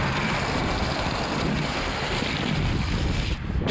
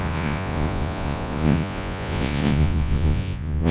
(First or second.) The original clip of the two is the first